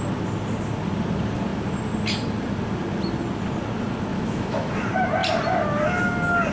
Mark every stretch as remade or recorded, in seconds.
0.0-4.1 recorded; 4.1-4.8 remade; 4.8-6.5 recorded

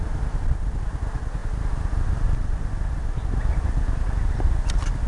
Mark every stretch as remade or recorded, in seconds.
0.0-5.1 recorded

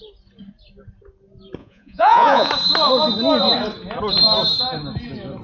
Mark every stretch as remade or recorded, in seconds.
0.0-1.6 recorded; 1.6-2.5 remade; 2.5-5.4 recorded

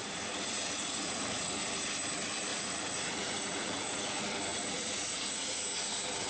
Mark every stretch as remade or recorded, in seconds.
0.0-1.6 remade; 1.6-2.5 recorded; 2.5-4.0 remade; 4.0-4.5 recorded; 4.5-5.6 remade; 5.6-6.3 recorded

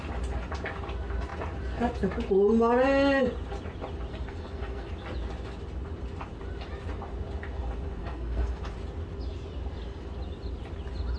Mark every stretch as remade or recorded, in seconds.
0.0-4.1 recorded; 4.1-4.9 remade; 4.9-8.0 recorded; 8.0-8.6 remade; 8.6-11.2 recorded

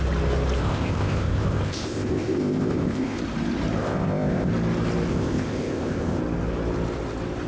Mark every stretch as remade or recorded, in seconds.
0.0-0.6 recorded; 0.6-3.2 remade; 3.2-3.8 recorded; 3.8-4.5 remade; 4.5-5.1 recorded; 5.1-6.2 remade; 6.2-7.5 recorded

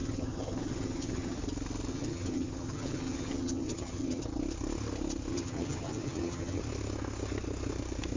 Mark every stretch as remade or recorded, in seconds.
0.0-1.4 remade; 1.4-1.9 recorded; 1.9-4.2 remade; 4.2-5.3 recorded; 5.3-6.6 remade; 6.6-8.2 recorded

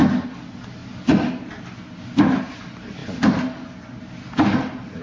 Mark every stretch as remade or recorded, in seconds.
0.0-5.0 recorded